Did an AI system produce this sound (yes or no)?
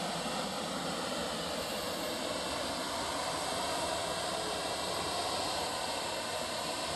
no